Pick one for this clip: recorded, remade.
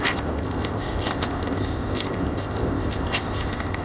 remade